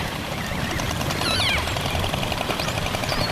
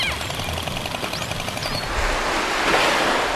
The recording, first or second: second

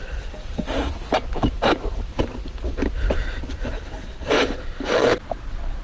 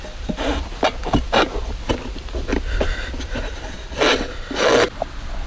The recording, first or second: second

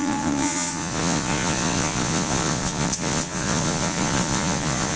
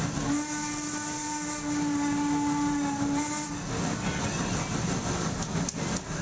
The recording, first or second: second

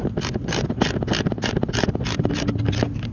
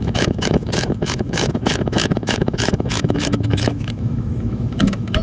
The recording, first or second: first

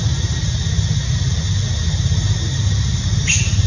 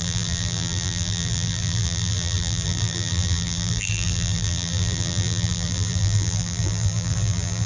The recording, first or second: first